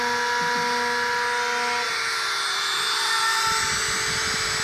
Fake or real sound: real